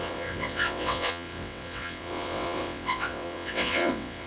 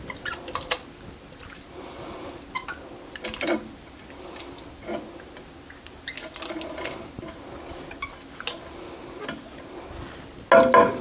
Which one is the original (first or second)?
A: second